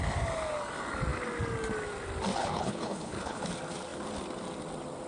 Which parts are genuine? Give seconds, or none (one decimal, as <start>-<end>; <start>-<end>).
0.0-2.4; 3.4-5.1